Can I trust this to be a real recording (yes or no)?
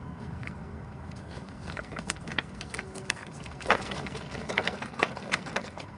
no